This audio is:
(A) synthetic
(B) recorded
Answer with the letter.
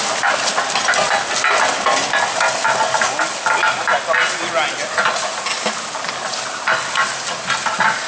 B